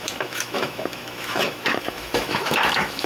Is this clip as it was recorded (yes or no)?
no